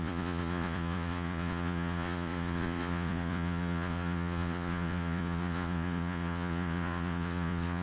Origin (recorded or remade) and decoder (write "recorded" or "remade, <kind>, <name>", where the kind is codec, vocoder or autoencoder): remade, vocoder, Vocos